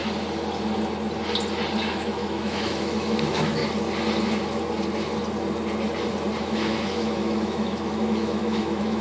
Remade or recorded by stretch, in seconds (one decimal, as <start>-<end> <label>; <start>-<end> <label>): 0.0-1.9 recorded; 1.9-3.6 remade; 3.6-6.4 recorded; 6.4-9.0 remade